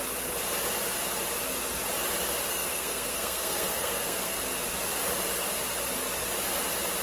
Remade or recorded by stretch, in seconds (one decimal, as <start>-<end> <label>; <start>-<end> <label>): 0.0-2.5 recorded; 2.5-4.4 remade; 4.4-7.0 recorded